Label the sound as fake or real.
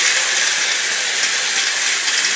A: real